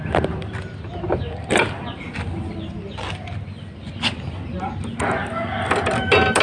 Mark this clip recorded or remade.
recorded